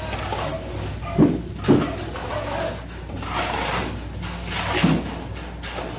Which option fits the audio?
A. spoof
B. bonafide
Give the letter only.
B